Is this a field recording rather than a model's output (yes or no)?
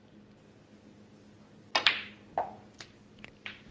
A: yes